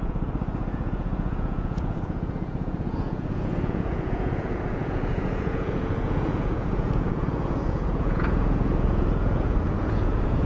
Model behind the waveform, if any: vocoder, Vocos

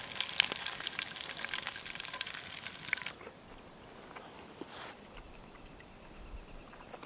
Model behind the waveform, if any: none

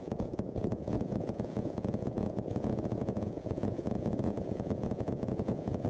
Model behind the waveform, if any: vocoder, Vocos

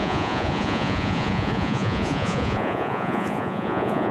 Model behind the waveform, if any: vocoder, Vocos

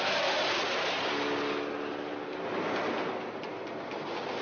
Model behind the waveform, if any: none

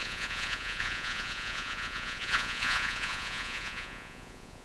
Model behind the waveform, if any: vocoder, Vocos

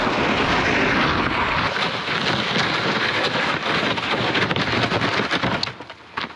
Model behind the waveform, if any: none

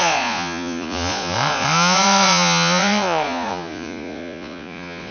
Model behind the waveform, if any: vocoder, Vocos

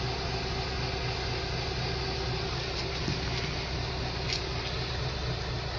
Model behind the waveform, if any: none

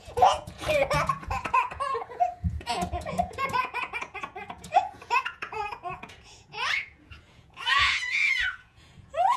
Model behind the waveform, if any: vocoder, Vocos